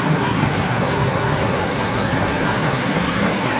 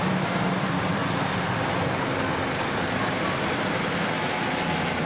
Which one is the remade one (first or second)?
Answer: first